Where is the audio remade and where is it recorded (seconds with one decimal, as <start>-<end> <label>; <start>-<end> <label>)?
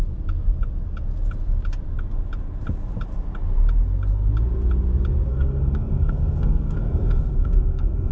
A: 0.0-5.3 recorded; 5.3-8.1 remade